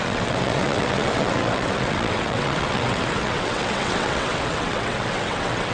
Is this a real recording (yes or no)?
no